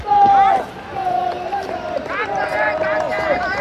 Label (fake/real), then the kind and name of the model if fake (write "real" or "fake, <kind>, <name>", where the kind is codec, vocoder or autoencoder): real